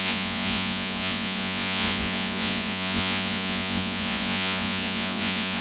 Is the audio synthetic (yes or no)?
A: yes